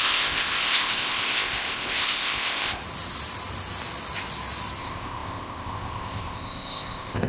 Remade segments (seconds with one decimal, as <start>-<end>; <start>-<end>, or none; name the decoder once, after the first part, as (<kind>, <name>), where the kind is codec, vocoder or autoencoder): 0.0-2.8 (codec, ZipCodec); 4.8-7.3